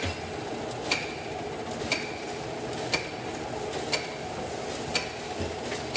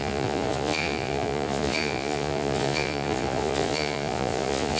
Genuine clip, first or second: first